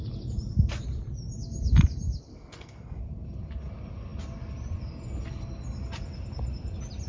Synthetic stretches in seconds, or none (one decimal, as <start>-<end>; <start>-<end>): 2.3-3.0